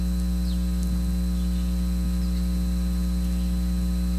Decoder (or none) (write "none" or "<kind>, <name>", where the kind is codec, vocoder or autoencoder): none